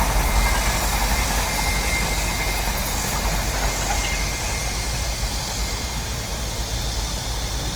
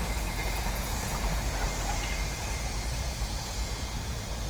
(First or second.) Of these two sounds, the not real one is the second